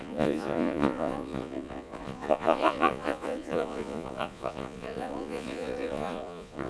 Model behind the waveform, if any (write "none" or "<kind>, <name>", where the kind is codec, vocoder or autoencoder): vocoder, Vocos